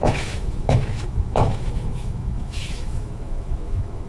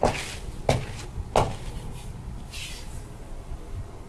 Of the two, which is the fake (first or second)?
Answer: first